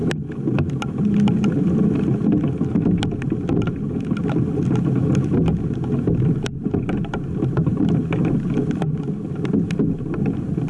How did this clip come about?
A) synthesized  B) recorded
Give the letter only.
B